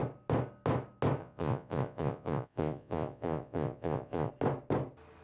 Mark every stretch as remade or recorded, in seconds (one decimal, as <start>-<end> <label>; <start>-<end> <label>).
0.0-1.2 recorded; 1.2-4.3 remade; 4.3-5.2 recorded